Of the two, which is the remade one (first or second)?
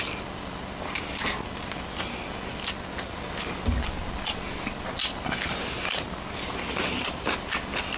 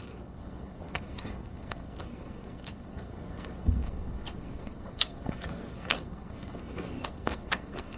second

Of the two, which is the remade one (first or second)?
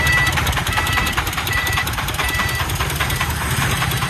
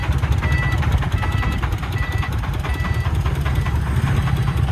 first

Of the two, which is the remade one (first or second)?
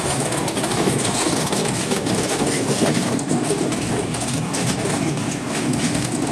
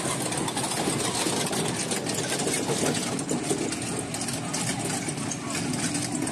first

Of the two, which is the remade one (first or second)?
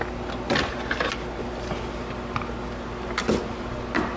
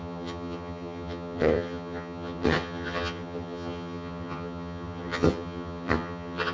second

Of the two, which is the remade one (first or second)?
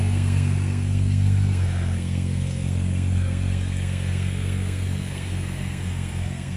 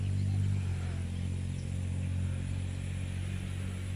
first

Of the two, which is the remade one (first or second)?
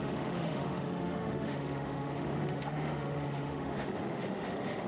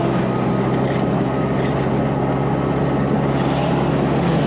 first